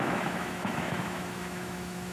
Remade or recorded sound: remade